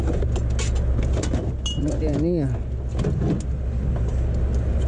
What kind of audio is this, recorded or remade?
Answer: recorded